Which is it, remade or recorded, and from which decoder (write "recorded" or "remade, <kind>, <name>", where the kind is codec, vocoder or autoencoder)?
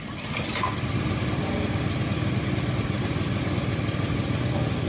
recorded